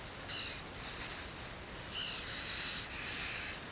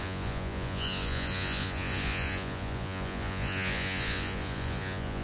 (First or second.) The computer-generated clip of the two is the second